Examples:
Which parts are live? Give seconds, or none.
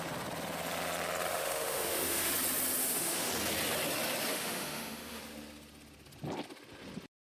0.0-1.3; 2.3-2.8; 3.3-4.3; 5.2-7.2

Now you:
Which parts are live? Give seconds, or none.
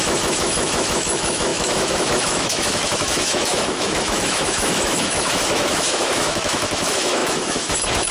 none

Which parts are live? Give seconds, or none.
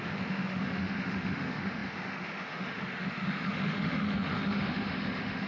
none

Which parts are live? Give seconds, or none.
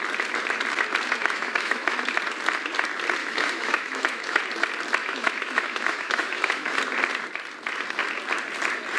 0.0-1.2; 2.0-3.2; 4.4-5.0; 6.8-9.0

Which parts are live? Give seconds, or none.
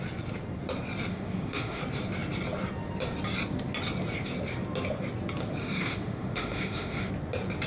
0.0-1.1; 1.8-5.6; 7.1-7.7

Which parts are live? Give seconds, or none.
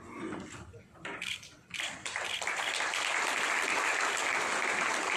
0.0-5.2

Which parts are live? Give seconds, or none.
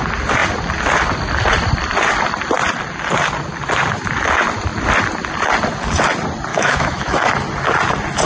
0.0-6.5; 7.3-8.3